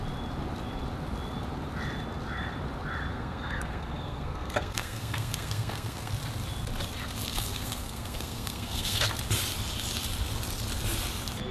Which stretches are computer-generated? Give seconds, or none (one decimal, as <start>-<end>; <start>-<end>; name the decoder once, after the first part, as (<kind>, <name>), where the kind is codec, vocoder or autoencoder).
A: 3.1-6.1 (codec, SNAC); 7.3-9.1